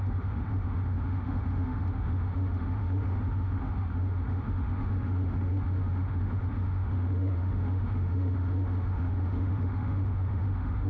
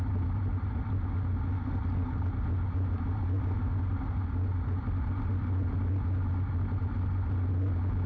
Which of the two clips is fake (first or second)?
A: first